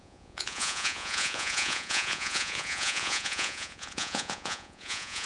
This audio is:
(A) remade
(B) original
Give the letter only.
A